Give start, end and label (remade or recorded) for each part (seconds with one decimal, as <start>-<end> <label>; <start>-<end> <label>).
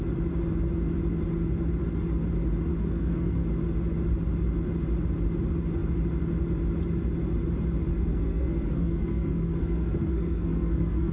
0.0-2.7 recorded; 2.7-3.5 remade; 3.5-7.9 recorded; 7.9-11.1 remade